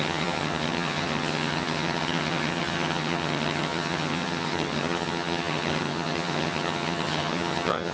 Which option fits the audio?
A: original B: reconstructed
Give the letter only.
B